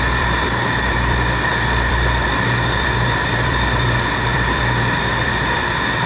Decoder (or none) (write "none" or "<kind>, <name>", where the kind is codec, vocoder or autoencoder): vocoder, BigVGAN v2